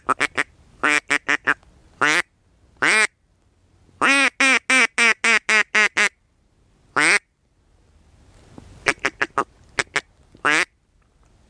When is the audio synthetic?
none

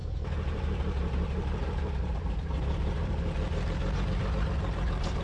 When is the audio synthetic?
0.0-5.2 (vocoder, BigVGAN v2)

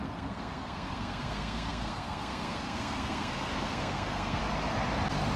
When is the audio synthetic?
0.0-4.4 (codec, SNAC)

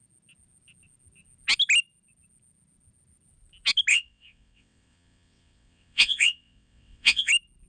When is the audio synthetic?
3.9-7.3 (vocoder, WaveNeXt)